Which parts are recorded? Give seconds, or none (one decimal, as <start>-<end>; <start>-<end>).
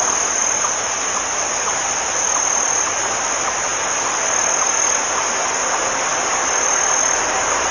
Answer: 0.0-6.1; 7.0-7.7